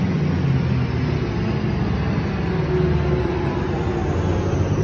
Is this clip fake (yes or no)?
no